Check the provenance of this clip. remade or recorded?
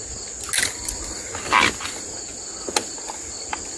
recorded